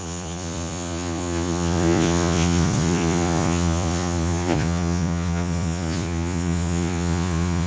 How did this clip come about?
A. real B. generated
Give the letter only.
B